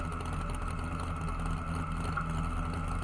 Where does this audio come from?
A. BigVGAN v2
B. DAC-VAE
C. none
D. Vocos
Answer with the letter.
C